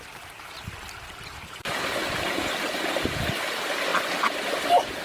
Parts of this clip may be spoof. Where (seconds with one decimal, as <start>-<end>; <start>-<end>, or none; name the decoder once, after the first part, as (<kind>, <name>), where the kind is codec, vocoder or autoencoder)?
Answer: none